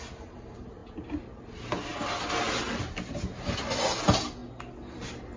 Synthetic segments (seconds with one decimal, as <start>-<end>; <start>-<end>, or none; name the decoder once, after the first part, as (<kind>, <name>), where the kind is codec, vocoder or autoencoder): none